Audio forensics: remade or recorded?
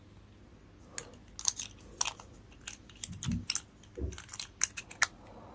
recorded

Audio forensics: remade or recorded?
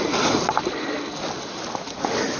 recorded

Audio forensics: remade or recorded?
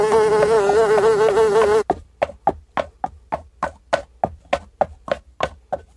recorded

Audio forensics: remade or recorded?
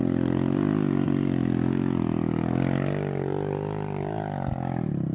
recorded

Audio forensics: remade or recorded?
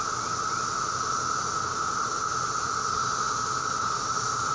recorded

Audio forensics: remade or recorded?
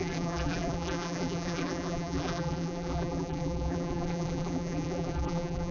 remade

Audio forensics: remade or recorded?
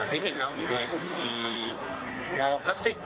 remade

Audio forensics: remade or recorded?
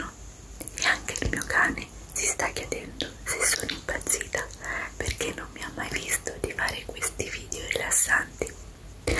recorded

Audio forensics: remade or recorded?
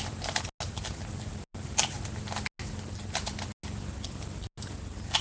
recorded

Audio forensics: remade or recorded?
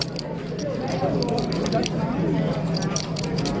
recorded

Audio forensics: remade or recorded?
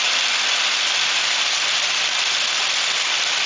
recorded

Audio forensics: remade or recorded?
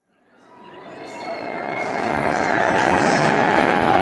remade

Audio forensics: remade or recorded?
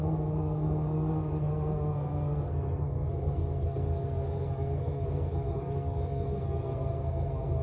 remade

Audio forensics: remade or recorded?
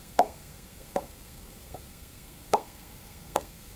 remade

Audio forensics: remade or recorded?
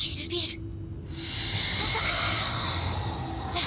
recorded